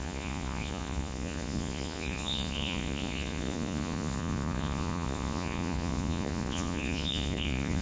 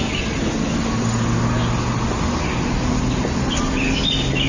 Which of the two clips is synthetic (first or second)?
first